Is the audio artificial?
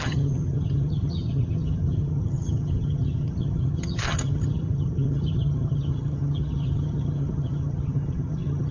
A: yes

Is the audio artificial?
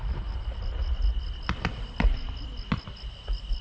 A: no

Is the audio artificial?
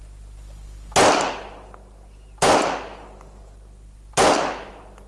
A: no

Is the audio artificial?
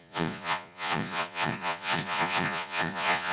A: yes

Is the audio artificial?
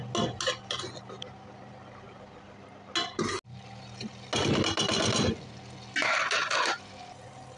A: no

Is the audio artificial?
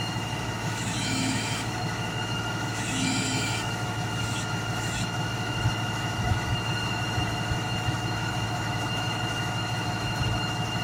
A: yes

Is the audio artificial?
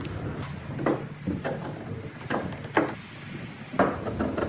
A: no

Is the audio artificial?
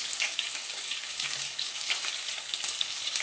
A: yes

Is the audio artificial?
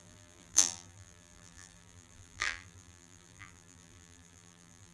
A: yes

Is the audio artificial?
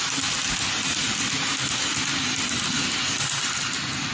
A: no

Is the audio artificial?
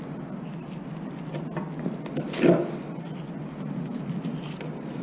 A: no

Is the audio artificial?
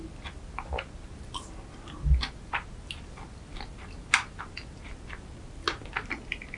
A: no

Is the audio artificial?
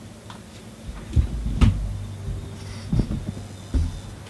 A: no